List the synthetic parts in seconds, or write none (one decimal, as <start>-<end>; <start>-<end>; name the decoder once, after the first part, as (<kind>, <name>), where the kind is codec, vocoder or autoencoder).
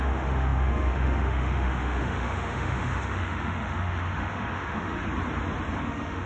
0.0-5.0 (autoencoder, DAC-VAE); 5.8-6.3